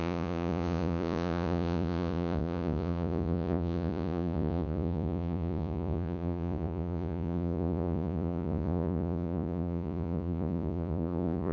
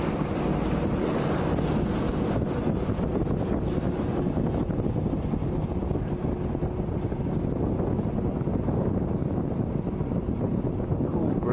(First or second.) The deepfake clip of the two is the first